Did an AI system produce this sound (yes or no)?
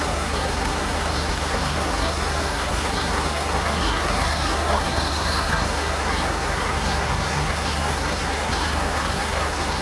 yes